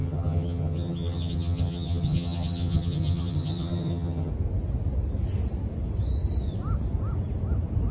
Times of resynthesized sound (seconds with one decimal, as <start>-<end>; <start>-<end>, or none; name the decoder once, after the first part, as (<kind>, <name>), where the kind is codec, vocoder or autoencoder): 0.0-4.3 (vocoder, HiFi-GAN)